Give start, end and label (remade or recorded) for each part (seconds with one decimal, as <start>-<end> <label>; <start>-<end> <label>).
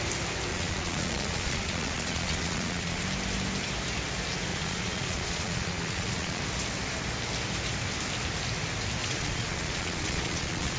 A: 0.0-0.5 recorded; 0.5-3.0 remade; 3.0-4.5 recorded; 4.5-6.4 remade; 6.4-9.0 recorded; 9.0-10.8 remade